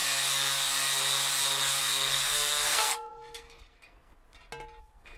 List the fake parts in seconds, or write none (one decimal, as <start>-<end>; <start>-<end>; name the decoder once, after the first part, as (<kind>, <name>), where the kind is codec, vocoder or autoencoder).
1.8-4.2 (codec, SNAC); 4.8-5.2